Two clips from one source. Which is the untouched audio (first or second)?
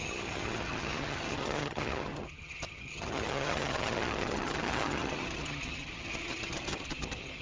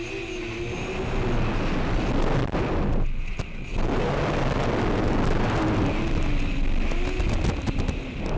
second